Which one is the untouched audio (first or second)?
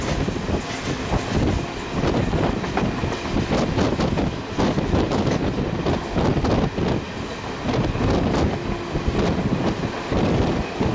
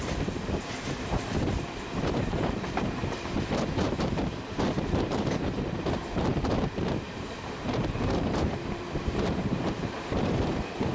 first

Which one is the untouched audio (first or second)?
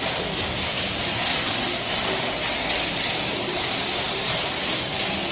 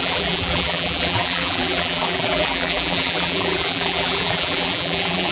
first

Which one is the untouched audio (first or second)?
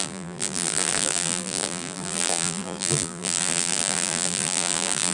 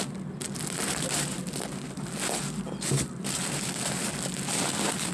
second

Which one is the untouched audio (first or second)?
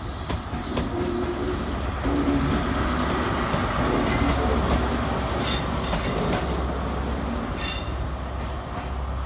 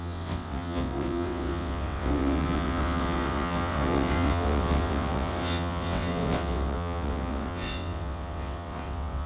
first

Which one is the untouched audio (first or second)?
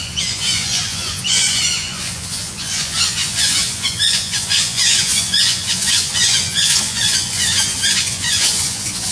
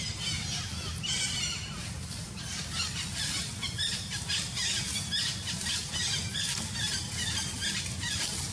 second